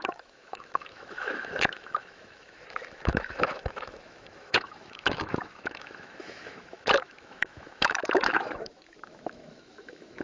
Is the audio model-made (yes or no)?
yes